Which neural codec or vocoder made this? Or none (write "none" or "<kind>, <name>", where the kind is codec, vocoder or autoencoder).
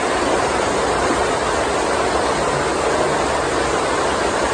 none